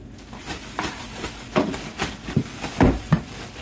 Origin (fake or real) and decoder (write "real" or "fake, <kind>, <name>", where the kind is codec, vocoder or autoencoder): real